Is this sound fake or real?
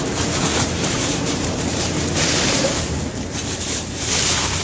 fake